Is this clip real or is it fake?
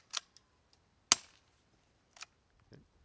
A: real